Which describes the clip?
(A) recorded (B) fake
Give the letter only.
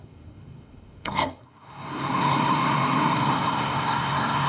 B